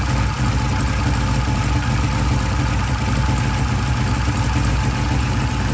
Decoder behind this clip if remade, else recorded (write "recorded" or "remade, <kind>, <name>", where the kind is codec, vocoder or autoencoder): recorded